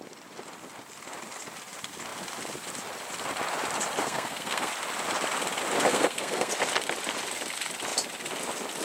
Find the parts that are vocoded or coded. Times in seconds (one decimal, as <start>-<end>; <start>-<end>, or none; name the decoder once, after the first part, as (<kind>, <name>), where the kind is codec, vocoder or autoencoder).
4.0-4.7 (codec, SNAC); 5.9-6.5